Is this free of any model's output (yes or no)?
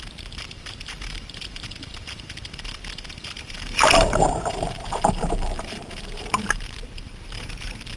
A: no